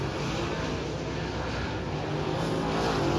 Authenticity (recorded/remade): recorded